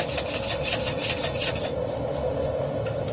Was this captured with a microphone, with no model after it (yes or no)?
yes